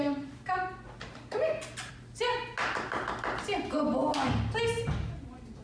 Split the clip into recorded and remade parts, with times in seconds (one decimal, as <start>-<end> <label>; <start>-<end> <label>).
0.0-5.6 recorded